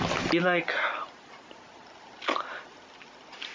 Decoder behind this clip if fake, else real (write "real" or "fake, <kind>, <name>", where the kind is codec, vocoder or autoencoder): real